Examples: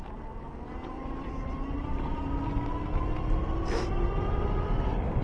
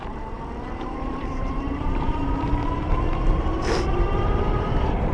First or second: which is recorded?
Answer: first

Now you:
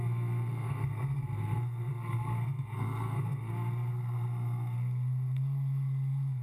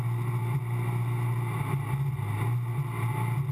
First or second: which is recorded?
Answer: second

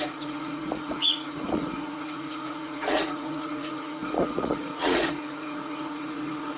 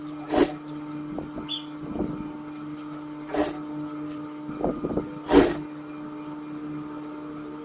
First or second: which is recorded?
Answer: second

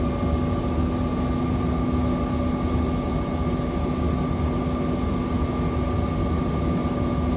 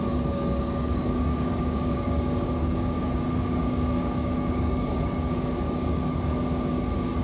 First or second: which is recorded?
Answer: first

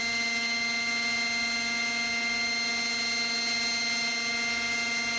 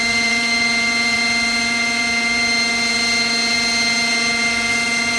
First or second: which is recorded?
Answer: first